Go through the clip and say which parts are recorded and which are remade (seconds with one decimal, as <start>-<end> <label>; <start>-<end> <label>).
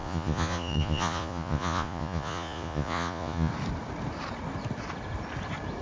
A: 0.0-3.5 remade; 3.5-5.8 recorded